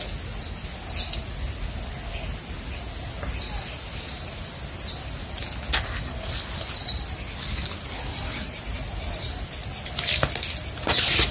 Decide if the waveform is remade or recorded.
recorded